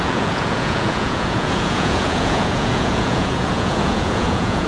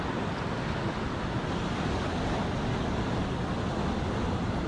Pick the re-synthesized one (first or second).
first